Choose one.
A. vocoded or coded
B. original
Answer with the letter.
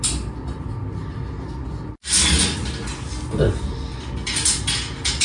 B